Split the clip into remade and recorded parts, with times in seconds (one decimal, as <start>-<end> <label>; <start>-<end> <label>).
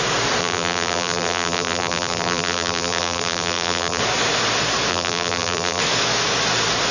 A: 0.0-0.4 recorded; 0.4-4.0 remade; 4.0-4.9 recorded; 4.9-5.8 remade; 5.8-6.9 recorded